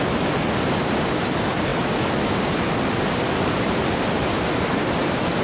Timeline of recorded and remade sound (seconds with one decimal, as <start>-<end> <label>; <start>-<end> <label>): 0.0-5.4 recorded